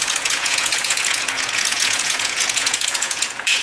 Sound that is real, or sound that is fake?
fake